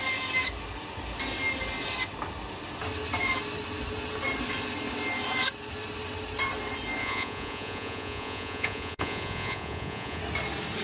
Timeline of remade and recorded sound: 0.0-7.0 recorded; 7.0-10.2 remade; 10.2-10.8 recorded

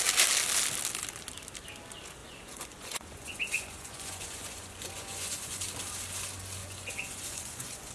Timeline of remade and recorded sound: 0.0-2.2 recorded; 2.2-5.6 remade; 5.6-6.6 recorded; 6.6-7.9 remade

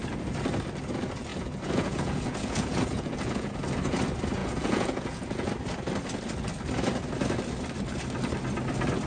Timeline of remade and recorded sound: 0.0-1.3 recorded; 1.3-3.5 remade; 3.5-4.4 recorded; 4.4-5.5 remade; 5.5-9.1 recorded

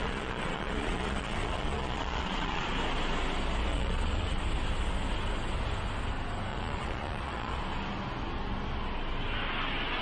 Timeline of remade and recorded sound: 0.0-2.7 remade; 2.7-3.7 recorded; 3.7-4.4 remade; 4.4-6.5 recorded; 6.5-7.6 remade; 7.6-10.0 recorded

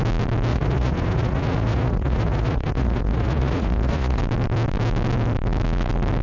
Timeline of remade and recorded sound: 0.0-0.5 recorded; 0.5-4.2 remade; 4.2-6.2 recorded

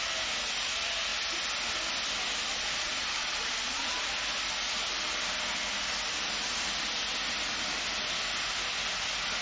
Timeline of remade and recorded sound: 0.0-2.5 recorded; 2.5-4.0 remade; 4.0-9.4 recorded

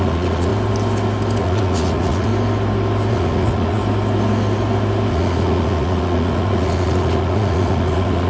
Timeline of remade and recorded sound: 0.0-0.5 remade; 0.5-1.4 recorded; 1.4-2.3 remade; 2.3-3.1 recorded; 3.1-3.8 remade; 3.8-5.1 recorded; 5.1-8.3 remade

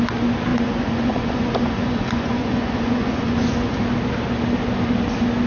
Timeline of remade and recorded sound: 0.0-0.5 recorded; 0.5-3.8 remade; 3.8-5.5 recorded